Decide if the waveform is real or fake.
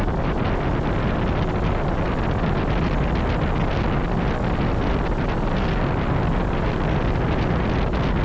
real